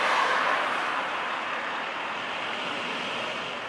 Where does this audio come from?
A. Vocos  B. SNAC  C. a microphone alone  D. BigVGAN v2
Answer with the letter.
D